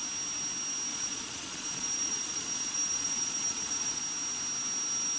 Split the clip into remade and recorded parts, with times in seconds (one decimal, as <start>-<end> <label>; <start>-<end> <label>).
0.0-0.9 recorded; 0.9-4.0 remade; 4.0-5.2 recorded